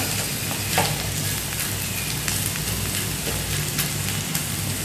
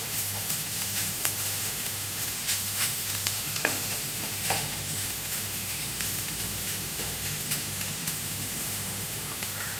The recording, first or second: first